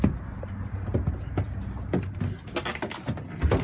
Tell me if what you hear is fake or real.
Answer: real